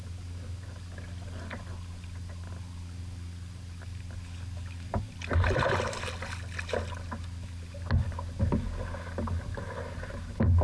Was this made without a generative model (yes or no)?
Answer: yes